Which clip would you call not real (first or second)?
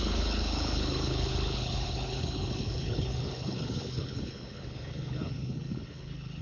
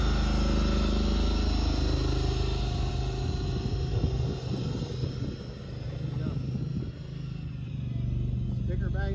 first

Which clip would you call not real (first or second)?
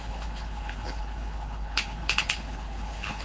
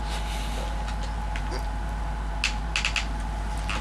first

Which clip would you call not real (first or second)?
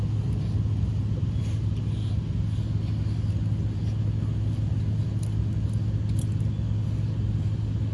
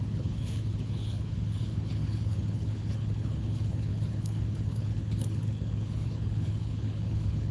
second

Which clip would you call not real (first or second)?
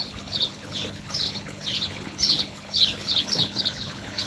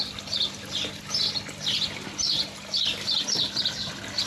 first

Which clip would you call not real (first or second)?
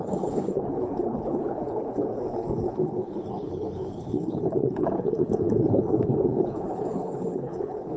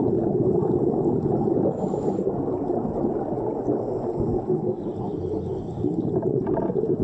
first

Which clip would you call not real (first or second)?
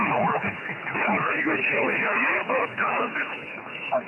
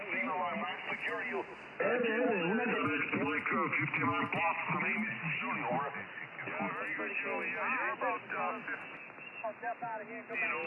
first